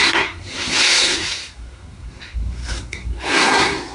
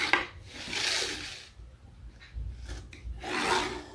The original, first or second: second